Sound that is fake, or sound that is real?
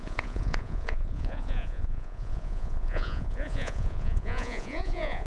fake